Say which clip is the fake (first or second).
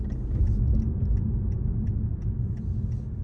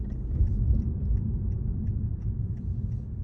second